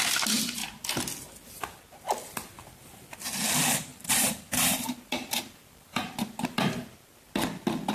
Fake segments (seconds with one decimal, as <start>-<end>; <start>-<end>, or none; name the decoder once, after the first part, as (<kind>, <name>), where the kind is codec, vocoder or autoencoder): 3.9-6.7 (vocoder, BigVGAN v2)